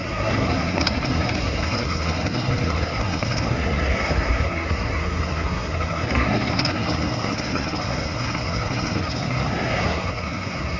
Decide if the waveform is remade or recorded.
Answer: remade